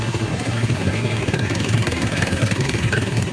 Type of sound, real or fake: fake